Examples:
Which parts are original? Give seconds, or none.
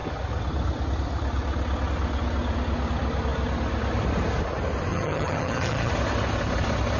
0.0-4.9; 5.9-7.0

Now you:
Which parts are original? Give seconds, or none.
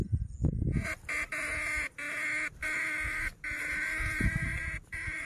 0.0-5.3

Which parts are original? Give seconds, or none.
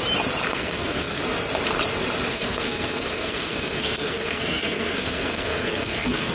0.0-0.5; 1.2-2.3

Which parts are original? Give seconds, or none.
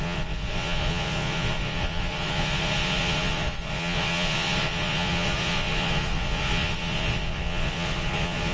none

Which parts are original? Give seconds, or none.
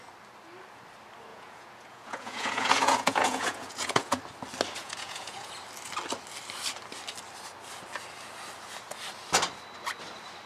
0.0-1.3; 4.2-4.8; 5.5-10.5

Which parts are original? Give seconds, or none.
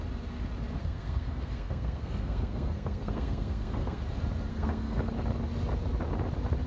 0.0-0.8; 4.0-4.5; 5.1-6.7